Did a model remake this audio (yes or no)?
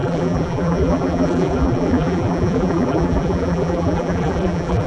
yes